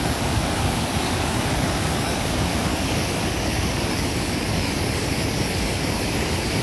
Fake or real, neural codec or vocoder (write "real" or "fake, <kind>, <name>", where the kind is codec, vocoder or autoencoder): fake, codec, DAC